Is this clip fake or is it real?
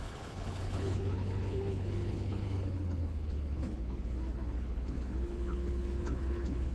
fake